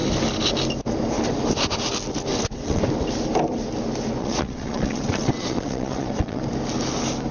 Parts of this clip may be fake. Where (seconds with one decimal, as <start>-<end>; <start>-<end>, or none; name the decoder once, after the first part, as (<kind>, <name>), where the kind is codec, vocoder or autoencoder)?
2.3-2.8 (vocoder, WaveNeXt); 4.2-6.4